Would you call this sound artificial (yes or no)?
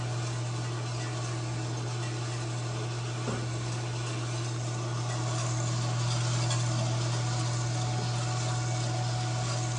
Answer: no